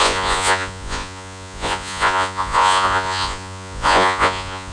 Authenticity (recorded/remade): remade